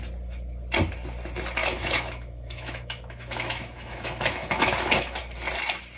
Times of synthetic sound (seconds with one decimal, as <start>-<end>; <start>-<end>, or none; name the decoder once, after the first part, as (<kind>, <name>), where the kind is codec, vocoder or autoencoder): 1.6-5.2 (autoencoder, DAC-VAE)